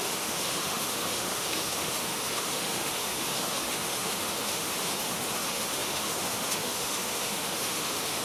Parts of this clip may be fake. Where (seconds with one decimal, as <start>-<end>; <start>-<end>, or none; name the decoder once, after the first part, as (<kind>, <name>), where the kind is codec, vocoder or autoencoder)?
0.0-8.2 (autoencoder, DAC-VAE)